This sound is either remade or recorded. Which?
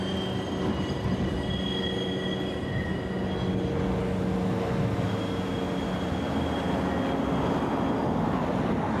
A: recorded